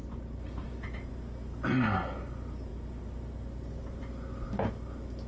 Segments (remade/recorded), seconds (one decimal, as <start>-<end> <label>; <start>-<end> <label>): 0.0-2.7 recorded; 2.7-4.0 remade; 4.0-5.3 recorded